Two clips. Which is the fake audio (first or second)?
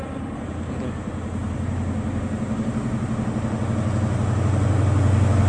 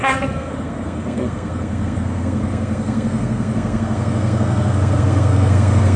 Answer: second